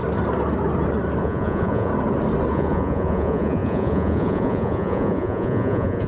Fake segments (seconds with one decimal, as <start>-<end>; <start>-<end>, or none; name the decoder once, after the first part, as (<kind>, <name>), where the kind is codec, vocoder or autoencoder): 1.2-1.9 (vocoder, Vocos); 2.5-6.1